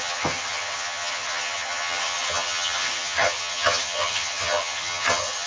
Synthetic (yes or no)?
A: yes